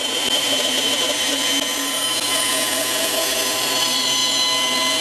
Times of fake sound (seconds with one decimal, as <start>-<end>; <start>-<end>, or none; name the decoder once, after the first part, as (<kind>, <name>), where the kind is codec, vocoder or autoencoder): 0.0-1.4 (vocoder, BigVGAN v2); 3.6-4.2

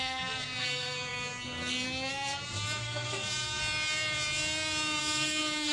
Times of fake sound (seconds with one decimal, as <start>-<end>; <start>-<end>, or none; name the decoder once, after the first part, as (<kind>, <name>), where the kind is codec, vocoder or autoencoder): 0.0-3.6 (codec, SNAC); 5.0-5.7

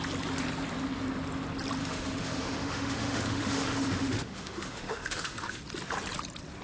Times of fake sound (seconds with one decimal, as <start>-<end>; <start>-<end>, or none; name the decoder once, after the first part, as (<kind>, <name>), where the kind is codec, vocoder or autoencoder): 1.8-5.6 (autoencoder, DAC-VAE)

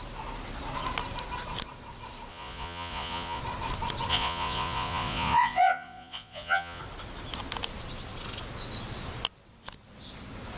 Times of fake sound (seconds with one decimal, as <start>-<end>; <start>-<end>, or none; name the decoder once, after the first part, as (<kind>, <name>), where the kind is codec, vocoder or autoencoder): 2.3-3.4 (vocoder, Vocos); 4.1-6.8

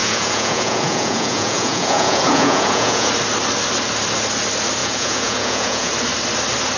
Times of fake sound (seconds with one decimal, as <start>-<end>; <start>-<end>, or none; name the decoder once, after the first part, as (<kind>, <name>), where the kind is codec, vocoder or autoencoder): 0.0-3.1 (vocoder, Vocos); 4.8-5.9

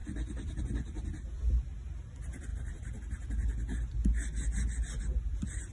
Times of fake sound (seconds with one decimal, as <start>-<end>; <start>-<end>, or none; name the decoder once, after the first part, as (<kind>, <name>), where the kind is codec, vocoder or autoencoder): none